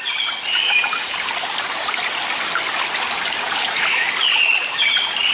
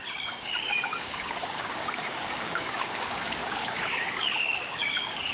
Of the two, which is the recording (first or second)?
first